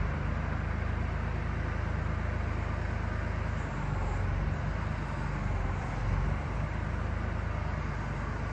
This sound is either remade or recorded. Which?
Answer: recorded